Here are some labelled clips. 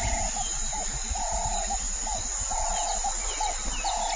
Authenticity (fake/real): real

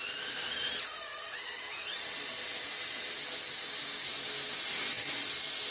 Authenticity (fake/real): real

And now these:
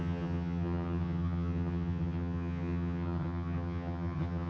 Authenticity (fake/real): fake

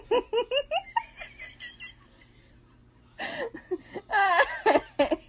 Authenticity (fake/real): real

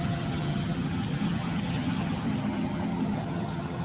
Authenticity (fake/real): fake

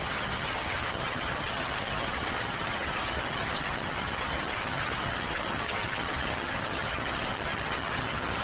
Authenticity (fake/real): fake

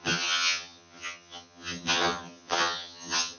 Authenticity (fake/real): fake